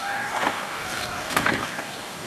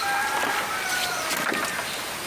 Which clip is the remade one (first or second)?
first